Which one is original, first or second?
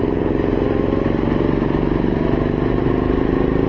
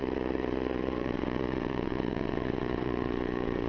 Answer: first